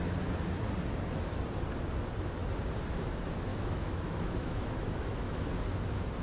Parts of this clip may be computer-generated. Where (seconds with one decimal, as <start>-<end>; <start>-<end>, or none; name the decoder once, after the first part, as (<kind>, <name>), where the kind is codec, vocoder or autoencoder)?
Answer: 3.5-5.4 (autoencoder, DAC-VAE)